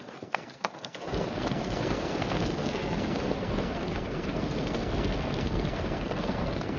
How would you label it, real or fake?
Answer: fake